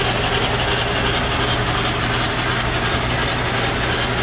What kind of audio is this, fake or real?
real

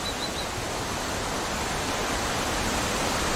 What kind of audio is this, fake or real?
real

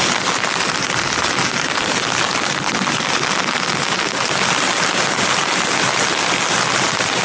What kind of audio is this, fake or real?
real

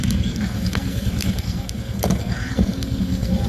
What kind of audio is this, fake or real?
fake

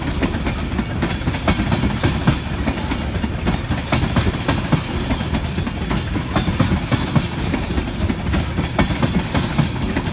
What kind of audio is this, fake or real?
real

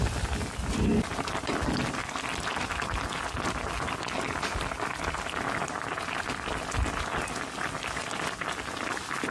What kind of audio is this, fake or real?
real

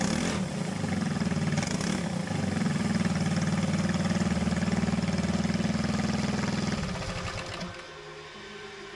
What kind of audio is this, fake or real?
real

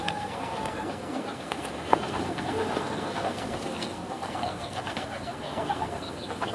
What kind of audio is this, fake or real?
fake